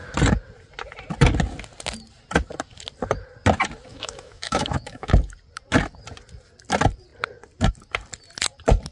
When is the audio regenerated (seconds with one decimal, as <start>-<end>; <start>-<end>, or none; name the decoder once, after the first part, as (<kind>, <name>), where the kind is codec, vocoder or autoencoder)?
3.9-5.1 (autoencoder, DAC-VAE)